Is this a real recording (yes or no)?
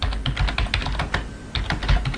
yes